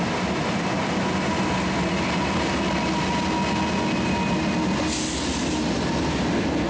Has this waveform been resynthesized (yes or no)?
no